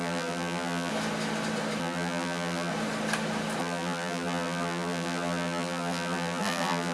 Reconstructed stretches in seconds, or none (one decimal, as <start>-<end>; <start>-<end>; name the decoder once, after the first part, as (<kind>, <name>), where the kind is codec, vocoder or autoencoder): 0.0-0.9 (vocoder, BigVGAN v2); 1.8-2.7; 3.6-6.9